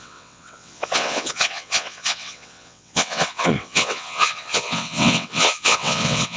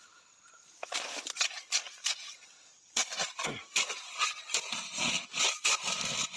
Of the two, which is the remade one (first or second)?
first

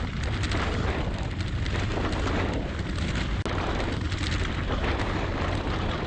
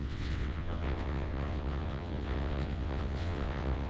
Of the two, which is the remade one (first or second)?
second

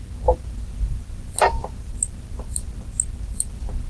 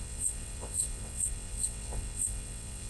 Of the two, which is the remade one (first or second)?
second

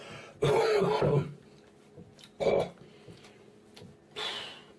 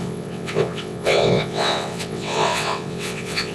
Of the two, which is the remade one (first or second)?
second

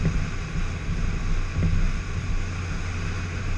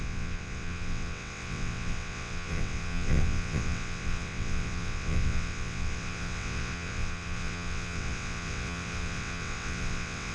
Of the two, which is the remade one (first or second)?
second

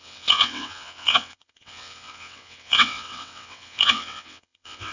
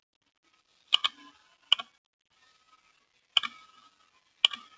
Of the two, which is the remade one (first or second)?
first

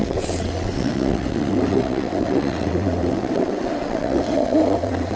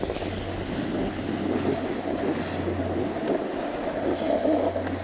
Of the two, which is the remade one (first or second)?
first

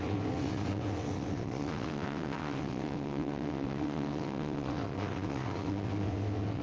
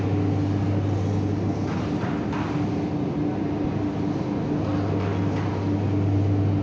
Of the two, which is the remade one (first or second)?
first